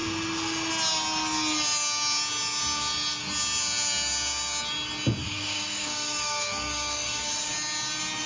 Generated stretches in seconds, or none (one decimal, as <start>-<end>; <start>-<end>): 5.2-7.5